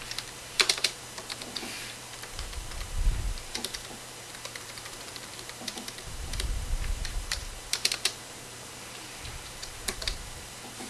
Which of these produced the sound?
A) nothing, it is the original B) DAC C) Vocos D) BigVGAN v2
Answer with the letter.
D